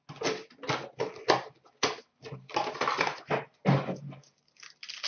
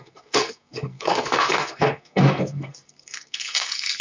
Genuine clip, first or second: first